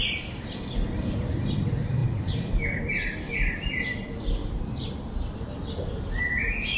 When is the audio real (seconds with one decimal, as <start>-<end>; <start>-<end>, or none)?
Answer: 0.0-2.0; 2.9-4.4; 4.9-6.8